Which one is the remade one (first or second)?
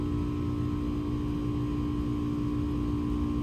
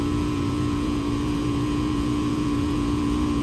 second